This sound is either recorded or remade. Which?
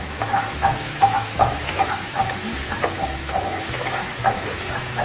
remade